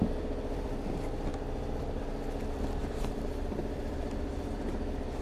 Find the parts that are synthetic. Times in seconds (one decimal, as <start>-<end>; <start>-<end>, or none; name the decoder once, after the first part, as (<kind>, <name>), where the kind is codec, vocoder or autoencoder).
2.8-5.2 (vocoder, BigVGAN v2)

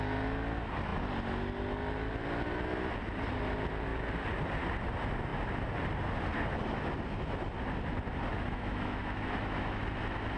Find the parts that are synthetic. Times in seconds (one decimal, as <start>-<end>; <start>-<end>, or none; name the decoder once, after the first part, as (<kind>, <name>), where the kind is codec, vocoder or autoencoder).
8.3-9.8 (autoencoder, DAC-VAE)

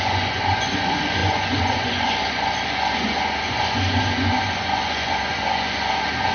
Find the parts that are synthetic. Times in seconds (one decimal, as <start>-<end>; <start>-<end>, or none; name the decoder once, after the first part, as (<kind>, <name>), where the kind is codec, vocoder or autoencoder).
0.0-6.3 (vocoder, Vocos)

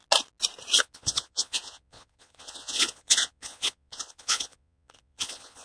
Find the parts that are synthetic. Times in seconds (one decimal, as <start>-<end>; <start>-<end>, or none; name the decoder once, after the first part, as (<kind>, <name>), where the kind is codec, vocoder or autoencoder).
0.8-5.6 (vocoder, Vocos)

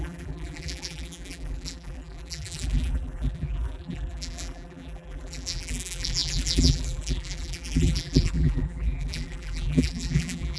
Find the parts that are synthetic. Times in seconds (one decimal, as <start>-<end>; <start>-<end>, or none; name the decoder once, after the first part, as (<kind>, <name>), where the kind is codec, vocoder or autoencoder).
0.0-10.6 (vocoder, BigVGAN v2)